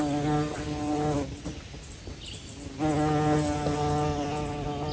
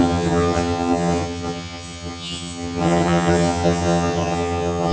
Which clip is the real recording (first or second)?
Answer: first